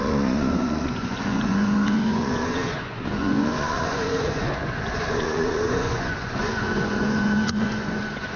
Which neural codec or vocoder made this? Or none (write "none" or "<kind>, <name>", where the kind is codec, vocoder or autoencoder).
vocoder, Vocos